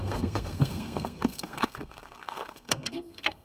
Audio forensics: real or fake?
fake